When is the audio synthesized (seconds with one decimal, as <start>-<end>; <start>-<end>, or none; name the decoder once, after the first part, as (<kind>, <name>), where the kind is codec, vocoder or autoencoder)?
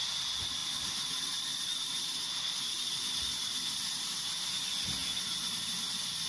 none